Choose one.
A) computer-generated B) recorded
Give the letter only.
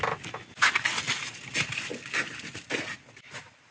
B